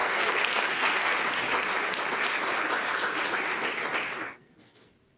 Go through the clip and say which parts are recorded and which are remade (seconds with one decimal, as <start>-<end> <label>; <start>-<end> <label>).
0.0-1.1 remade; 1.1-4.2 recorded; 4.2-5.2 remade

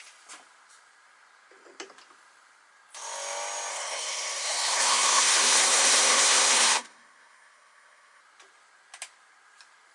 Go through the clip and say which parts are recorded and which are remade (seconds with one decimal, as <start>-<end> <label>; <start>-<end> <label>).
0.0-3.7 recorded; 3.7-8.2 remade; 8.2-9.9 recorded